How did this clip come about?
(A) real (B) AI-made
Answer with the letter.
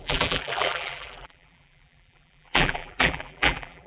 B